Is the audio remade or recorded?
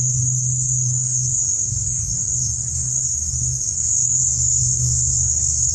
remade